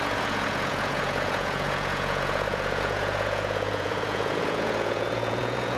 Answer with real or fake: fake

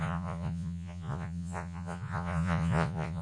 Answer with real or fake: fake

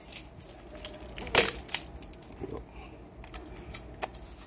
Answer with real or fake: real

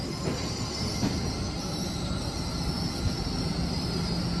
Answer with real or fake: real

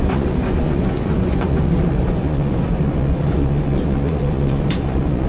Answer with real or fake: fake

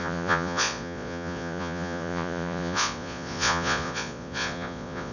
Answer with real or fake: fake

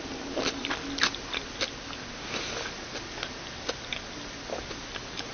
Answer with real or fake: real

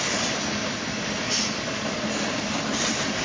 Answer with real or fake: real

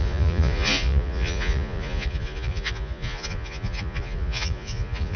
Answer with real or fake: fake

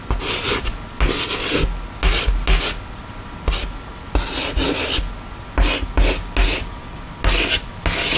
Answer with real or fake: real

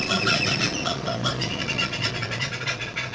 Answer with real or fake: fake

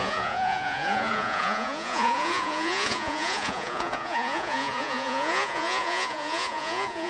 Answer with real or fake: fake